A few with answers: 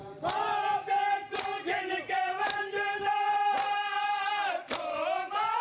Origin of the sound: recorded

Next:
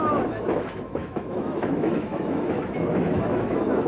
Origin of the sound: remade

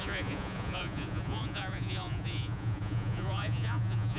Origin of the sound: remade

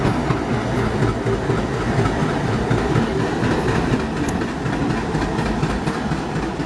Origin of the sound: recorded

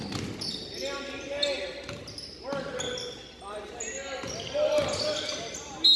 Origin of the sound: recorded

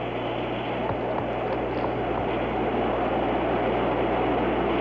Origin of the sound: recorded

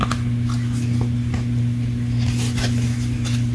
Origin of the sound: recorded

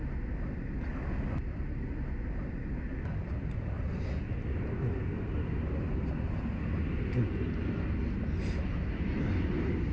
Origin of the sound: recorded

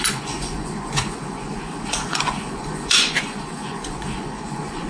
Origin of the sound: remade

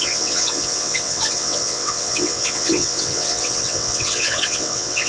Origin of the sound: remade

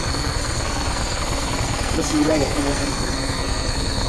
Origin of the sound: remade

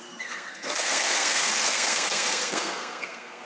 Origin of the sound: remade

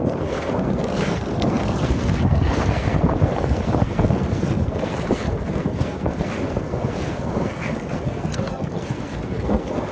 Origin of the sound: remade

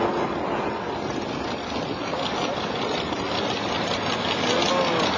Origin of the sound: recorded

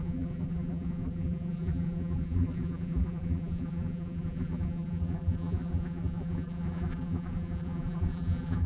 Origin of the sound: remade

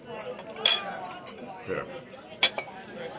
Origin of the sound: recorded